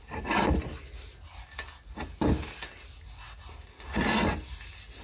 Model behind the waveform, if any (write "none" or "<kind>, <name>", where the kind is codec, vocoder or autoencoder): none